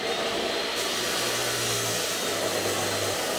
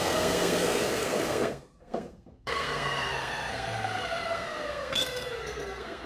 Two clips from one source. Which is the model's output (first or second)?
second